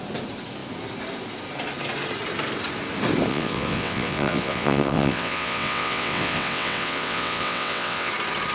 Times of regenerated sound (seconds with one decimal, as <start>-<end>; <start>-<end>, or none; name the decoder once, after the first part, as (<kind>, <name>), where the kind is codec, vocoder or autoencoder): 3.3-8.1 (vocoder, WaveNeXt)